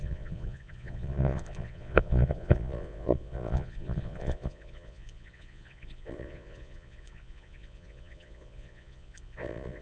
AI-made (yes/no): yes